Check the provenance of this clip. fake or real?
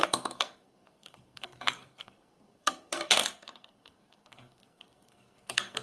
fake